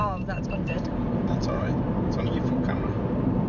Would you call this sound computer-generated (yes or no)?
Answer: yes